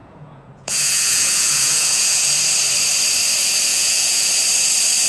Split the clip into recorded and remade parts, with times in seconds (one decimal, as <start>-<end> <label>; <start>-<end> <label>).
0.0-2.3 remade; 2.3-3.7 recorded; 3.7-4.3 remade; 4.3-5.1 recorded